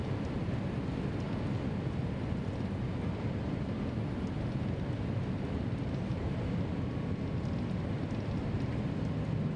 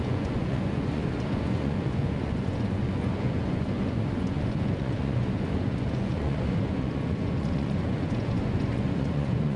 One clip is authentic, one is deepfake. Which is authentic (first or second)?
first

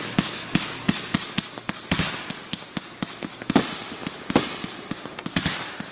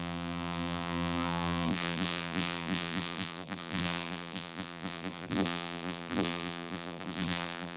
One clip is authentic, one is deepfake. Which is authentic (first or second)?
first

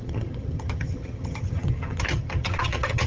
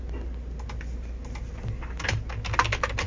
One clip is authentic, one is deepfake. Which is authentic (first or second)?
second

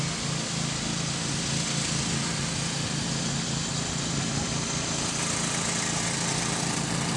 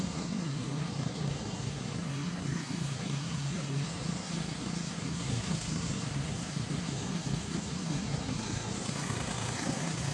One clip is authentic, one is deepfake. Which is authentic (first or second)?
first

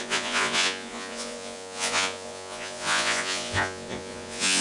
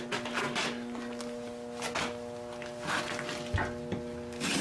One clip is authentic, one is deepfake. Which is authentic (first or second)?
second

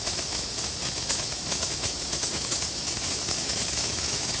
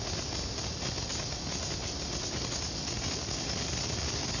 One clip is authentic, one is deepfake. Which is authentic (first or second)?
second